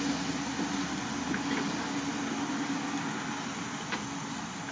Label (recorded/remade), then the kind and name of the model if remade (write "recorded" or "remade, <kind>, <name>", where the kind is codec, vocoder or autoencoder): recorded